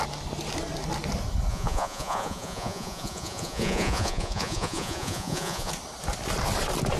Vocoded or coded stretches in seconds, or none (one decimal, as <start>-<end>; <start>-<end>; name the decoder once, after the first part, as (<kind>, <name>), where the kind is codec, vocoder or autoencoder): 1.5-5.7 (vocoder, Vocos)